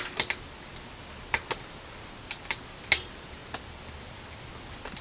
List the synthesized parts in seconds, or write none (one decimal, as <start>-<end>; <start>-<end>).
none